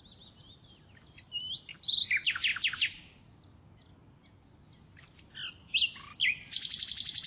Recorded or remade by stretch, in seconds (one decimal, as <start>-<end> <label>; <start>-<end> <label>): 0.0-7.3 recorded